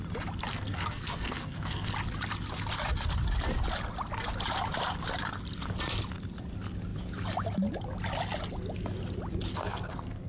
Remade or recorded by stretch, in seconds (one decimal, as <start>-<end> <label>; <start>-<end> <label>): 0.0-0.5 recorded; 0.5-1.9 remade; 1.9-9.5 recorded; 9.5-10.3 remade